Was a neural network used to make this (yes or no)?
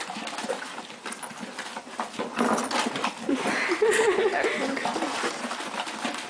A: yes